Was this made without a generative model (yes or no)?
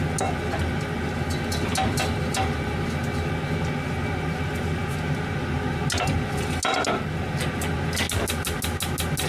yes